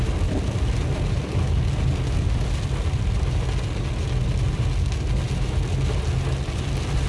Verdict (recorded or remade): recorded